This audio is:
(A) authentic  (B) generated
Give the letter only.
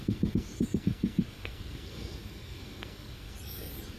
B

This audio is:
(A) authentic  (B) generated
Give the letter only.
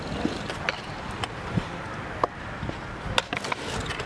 A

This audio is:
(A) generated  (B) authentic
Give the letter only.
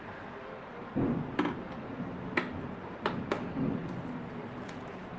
B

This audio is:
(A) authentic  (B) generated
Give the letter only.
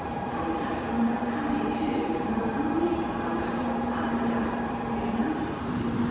B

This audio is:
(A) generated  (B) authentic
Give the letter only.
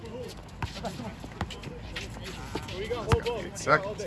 B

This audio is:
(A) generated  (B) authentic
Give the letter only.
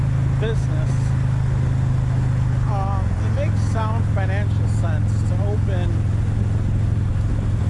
B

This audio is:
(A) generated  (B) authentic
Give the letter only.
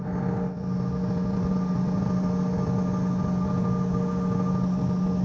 B